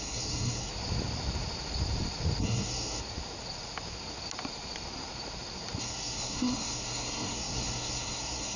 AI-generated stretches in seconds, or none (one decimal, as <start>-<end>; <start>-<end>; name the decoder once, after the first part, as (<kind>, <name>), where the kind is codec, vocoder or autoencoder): 0.0-0.7 (codec, SNAC); 2.4-3.0; 5.8-8.6